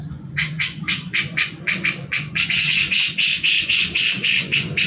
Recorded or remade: remade